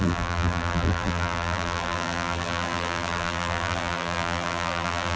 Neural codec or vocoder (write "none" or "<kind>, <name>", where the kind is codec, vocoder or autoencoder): vocoder, BigVGAN v2